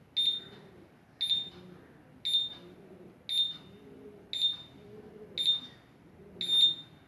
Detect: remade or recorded recorded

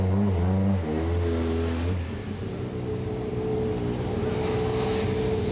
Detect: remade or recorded recorded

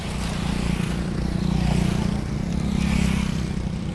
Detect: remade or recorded recorded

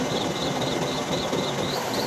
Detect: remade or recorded recorded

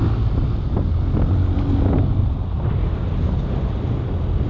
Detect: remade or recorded recorded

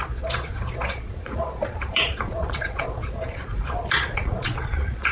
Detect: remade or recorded remade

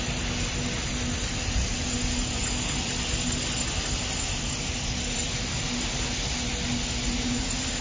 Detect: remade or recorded recorded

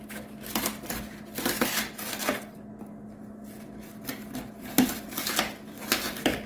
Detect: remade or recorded recorded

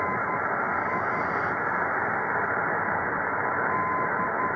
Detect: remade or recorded recorded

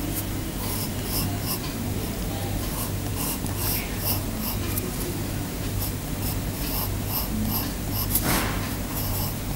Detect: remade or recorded recorded